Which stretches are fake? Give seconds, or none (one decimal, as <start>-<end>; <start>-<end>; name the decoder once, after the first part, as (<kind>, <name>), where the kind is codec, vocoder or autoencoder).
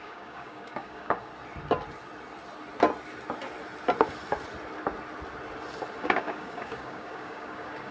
0.0-1.3 (codec, DAC); 6.0-7.9